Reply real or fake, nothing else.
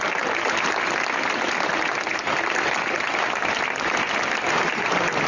real